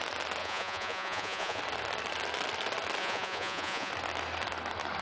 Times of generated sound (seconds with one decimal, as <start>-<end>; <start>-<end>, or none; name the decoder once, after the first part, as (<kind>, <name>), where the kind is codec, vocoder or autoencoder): 0.4-1.6 (vocoder, Vocos); 3.0-3.9